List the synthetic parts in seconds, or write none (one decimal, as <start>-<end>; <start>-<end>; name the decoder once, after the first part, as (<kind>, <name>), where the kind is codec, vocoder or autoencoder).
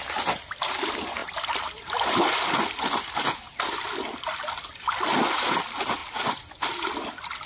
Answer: none